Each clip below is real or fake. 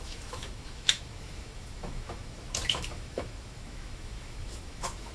fake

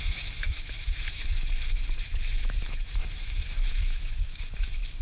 fake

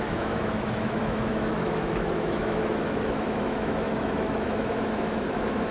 fake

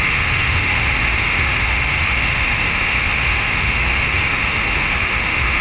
fake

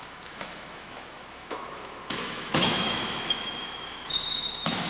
fake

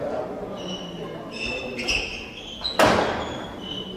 real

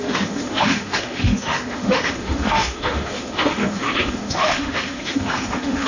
fake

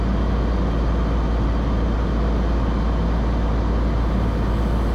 real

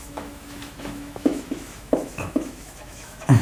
fake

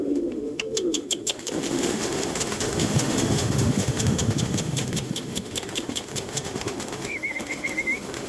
fake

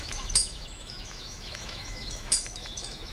fake